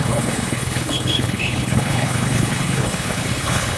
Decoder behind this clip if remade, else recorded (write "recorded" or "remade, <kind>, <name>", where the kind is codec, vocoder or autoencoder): remade, codec, HILCodec